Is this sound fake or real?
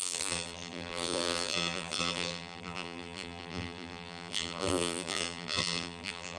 fake